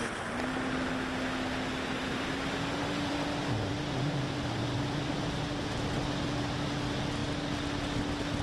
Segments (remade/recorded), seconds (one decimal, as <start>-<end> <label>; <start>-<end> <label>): 0.0-2.0 recorded; 2.0-5.8 remade; 5.8-8.4 recorded